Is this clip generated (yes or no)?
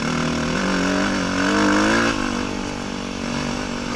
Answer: no